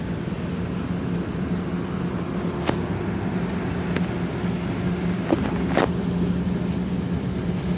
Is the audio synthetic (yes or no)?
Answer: no